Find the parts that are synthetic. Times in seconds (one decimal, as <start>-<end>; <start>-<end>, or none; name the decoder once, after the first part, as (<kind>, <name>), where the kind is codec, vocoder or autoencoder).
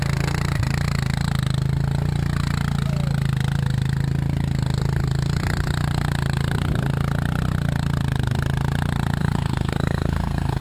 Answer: 9.2-10.6 (codec, SNAC)